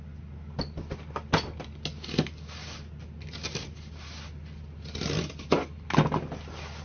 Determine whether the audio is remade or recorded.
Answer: recorded